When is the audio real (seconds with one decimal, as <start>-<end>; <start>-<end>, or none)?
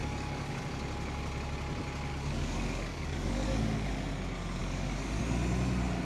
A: 0.6-2.1; 4.1-4.6; 5.2-6.0